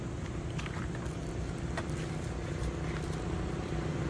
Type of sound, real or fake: real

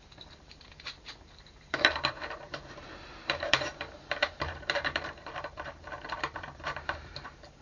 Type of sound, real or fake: fake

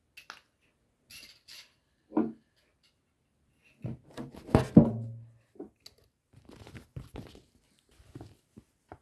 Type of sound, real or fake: real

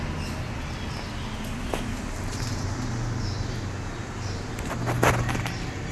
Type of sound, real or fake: real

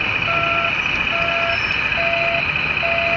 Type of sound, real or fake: real